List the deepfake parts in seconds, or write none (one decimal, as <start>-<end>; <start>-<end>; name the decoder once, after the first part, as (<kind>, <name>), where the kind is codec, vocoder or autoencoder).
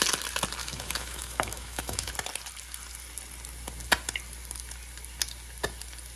0.6-2.1 (autoencoder, DAC-VAE)